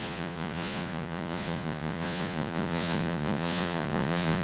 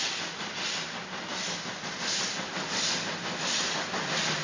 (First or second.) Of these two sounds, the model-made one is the first